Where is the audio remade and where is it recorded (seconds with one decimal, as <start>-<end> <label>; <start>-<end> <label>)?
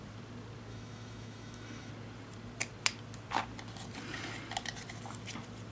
0.0-0.7 recorded; 0.7-1.9 remade; 1.9-5.7 recorded